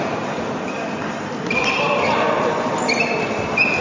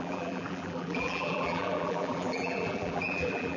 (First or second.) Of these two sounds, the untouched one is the first